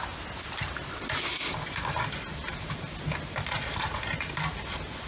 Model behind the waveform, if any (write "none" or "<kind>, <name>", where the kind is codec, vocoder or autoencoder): none